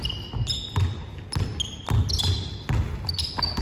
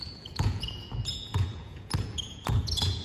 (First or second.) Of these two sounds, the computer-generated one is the second